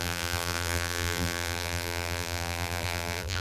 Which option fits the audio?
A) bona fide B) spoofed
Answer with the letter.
B